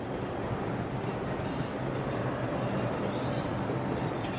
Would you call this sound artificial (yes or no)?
no